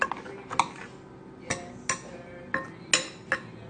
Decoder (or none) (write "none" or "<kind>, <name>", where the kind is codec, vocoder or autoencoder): none